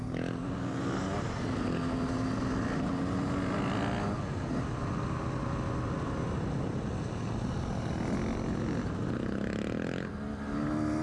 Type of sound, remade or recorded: recorded